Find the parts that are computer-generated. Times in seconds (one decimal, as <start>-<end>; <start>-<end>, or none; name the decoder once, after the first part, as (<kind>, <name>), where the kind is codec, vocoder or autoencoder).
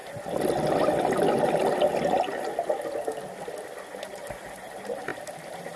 none